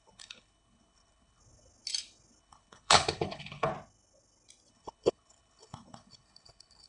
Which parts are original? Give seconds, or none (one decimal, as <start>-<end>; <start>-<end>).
1.4-2.4; 3.7-4.7